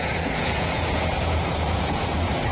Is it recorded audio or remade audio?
remade